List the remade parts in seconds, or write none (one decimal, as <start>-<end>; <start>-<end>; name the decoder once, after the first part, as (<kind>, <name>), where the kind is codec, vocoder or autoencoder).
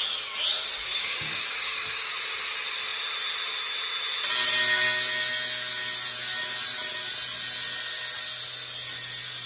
0.9-2.1 (codec, DAC)